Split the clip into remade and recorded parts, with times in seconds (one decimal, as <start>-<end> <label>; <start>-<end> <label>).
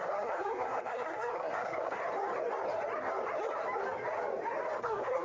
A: 0.0-2.0 remade; 2.0-4.8 recorded; 4.8-5.2 remade